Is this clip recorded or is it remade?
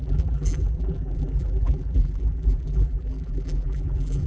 remade